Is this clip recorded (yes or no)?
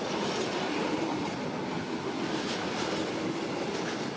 yes